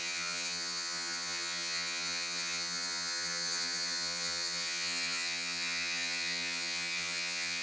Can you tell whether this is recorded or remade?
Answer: remade